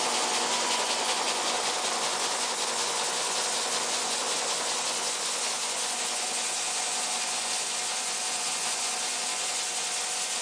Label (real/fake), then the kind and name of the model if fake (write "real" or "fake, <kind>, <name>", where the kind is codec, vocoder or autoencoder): fake, vocoder, Vocos